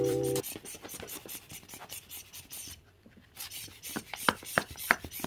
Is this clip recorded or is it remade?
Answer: remade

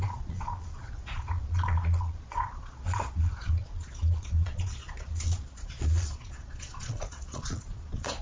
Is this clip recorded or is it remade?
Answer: remade